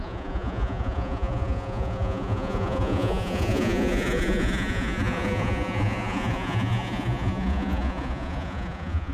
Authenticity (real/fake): fake